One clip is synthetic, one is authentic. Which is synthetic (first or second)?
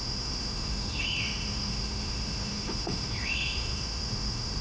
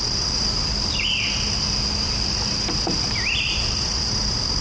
first